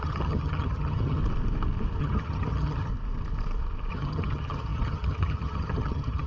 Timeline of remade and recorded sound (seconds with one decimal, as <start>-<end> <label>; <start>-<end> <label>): 0.0-1.2 remade; 1.2-2.0 recorded; 2.0-2.9 remade; 2.9-3.9 recorded; 3.9-6.3 remade